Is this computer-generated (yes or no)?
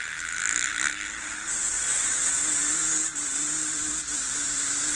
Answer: no